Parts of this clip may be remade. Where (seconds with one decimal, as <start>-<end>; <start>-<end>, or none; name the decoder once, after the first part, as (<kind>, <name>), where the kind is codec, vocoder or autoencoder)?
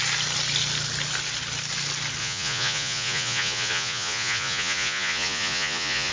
2.2-6.1 (vocoder, Vocos)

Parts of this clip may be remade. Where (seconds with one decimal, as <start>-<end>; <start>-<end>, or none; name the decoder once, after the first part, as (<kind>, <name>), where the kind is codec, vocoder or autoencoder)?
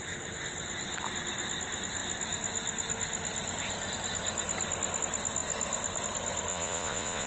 6.5-7.3 (vocoder, Vocos)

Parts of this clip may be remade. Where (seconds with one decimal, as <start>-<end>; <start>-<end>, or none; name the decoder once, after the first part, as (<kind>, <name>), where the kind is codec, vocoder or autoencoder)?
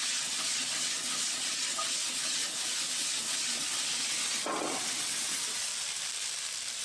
0.0-2.4 (vocoder, WaveNeXt); 2.9-5.7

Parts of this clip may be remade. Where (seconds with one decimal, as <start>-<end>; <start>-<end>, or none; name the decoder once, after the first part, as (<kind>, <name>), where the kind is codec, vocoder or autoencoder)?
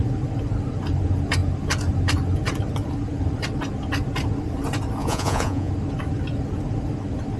5.0-5.7 (vocoder, Vocos)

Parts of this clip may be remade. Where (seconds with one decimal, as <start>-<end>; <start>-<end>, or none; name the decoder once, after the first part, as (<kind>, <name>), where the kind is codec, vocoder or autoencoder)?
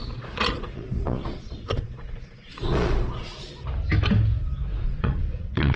0.0-3.3 (vocoder, Vocos); 4.8-5.8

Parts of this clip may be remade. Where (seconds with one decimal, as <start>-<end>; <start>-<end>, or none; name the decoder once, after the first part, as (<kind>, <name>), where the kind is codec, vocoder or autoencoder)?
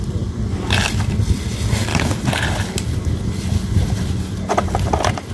none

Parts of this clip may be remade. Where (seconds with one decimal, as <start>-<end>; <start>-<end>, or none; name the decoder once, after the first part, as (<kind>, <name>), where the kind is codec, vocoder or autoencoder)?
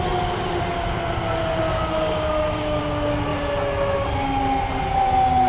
1.7-2.8 (codec, DAC)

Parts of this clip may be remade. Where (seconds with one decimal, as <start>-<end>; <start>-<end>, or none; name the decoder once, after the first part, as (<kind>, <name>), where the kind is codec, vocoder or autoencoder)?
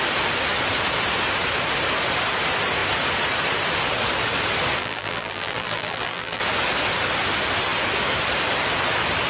4.8-6.4 (vocoder, BigVGAN v2)